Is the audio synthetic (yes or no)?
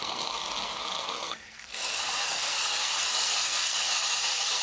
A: yes